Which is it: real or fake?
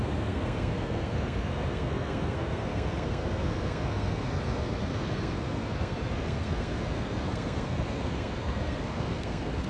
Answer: fake